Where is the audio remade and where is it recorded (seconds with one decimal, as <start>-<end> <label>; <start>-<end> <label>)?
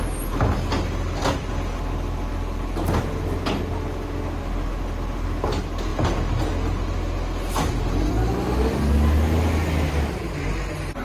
0.0-11.0 recorded